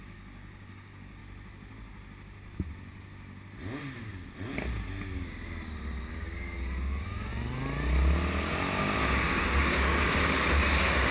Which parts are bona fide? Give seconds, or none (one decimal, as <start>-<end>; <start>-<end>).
1.2-6.1; 7.3-8.8